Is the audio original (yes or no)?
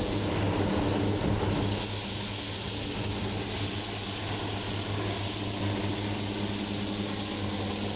yes